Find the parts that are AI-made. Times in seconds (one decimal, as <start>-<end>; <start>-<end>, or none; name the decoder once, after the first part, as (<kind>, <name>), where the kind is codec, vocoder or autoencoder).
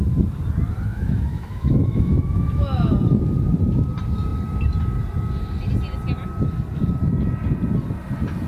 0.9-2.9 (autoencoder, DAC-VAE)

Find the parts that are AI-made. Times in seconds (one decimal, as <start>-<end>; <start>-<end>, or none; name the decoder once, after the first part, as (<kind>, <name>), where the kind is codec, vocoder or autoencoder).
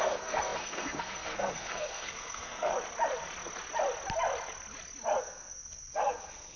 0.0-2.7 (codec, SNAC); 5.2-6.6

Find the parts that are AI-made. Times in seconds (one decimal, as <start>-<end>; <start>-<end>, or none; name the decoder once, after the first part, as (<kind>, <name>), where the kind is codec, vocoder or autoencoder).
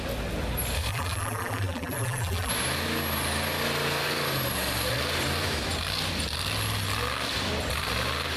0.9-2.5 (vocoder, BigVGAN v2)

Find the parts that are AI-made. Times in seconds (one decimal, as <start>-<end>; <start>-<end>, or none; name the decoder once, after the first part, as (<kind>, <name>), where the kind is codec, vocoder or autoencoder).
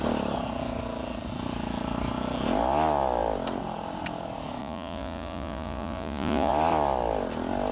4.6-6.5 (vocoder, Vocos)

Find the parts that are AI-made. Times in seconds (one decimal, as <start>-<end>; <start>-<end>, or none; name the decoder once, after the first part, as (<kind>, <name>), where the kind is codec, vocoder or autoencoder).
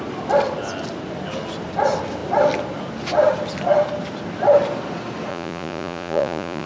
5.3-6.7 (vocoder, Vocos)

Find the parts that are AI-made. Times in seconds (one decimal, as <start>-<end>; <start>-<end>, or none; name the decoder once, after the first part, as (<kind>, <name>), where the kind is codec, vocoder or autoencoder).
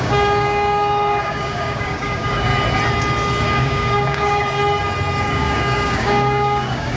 0.0-2.5 (codec, DAC); 3.4-4.6; 5.2-7.0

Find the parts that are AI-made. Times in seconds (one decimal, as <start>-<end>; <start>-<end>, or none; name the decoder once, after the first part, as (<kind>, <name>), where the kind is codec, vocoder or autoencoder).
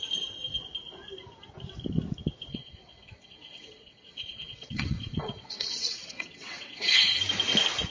2.5-7.2 (vocoder, WaveNeXt)